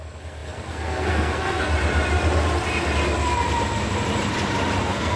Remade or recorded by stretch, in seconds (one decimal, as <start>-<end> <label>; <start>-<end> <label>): 0.0-1.7 remade; 1.7-4.8 recorded; 4.8-5.2 remade